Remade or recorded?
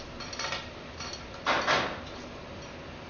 recorded